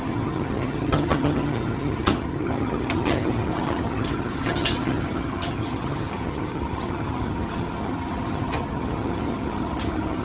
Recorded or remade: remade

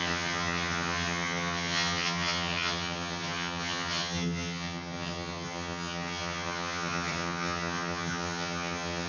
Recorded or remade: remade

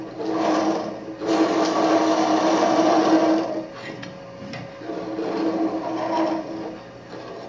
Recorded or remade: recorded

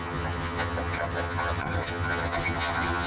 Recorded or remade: remade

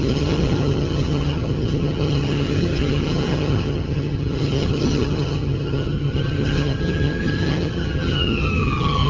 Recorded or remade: remade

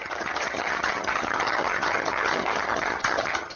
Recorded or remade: remade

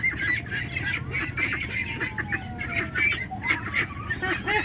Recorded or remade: recorded